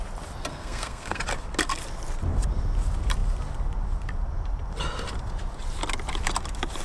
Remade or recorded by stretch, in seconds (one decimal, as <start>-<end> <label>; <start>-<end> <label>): 0.0-0.5 recorded; 0.5-1.2 remade; 1.2-6.8 recorded